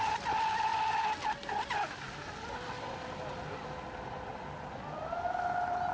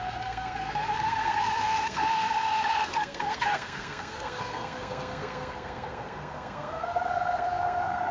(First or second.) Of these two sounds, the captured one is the first